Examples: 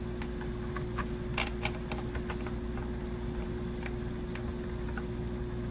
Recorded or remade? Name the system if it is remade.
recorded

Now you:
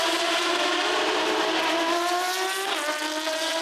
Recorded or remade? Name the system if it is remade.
recorded